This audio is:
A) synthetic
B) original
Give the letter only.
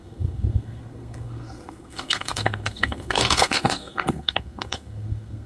A